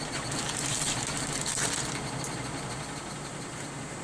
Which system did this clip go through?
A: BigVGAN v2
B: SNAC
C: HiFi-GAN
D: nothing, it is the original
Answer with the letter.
D